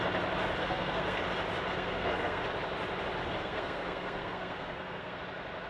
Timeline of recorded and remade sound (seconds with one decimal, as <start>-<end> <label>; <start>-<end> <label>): 0.0-0.6 recorded; 0.6-1.2 remade; 1.2-1.7 recorded; 1.7-2.4 remade; 2.4-3.2 recorded; 3.2-5.2 remade; 5.2-5.7 recorded